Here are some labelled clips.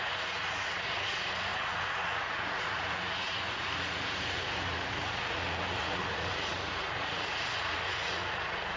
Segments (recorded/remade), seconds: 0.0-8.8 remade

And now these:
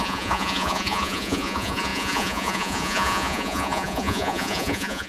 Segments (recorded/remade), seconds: 0.0-5.1 remade

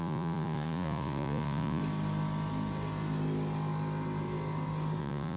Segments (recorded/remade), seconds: 0.0-1.8 remade; 1.8-5.0 recorded; 5.0-5.4 remade

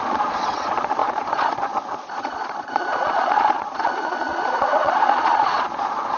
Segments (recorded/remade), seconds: 0.0-6.2 remade

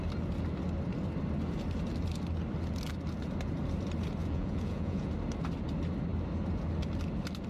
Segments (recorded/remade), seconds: 0.0-4.2 recorded; 4.2-5.1 remade; 5.1-7.5 recorded

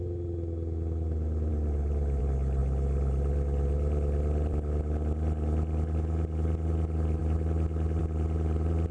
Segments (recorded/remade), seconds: 0.0-8.9 recorded

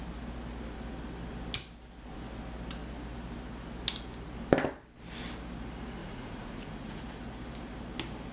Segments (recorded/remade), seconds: 0.0-6.0 recorded; 6.0-7.0 remade; 7.0-8.3 recorded